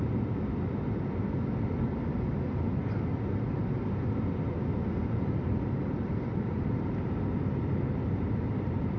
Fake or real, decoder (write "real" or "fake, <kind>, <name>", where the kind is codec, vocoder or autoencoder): real